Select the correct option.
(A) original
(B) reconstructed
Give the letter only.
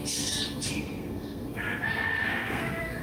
B